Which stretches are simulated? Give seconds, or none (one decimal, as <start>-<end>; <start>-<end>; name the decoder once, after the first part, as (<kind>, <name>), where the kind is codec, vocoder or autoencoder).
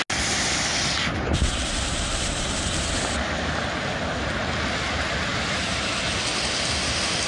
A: 1.7-3.0 (vocoder, BigVGAN v2); 5.3-6.0